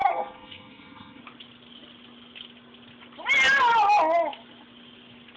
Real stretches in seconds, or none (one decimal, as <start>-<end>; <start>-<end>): 1.2-5.4